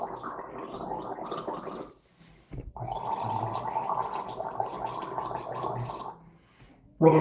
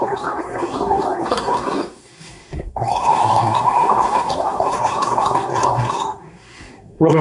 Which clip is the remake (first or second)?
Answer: second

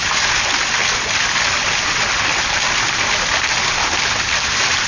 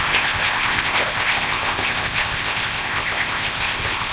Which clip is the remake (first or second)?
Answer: second